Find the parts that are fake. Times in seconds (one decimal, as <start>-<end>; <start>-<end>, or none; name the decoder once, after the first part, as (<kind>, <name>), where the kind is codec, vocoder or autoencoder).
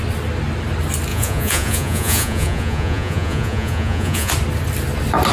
1.1-4.3 (vocoder, Vocos)